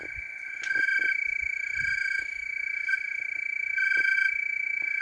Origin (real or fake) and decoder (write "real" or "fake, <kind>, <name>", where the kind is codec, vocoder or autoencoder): real